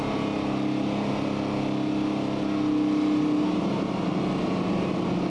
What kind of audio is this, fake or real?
real